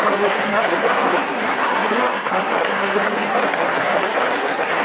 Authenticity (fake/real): fake